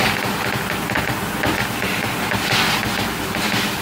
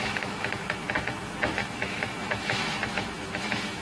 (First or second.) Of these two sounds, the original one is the first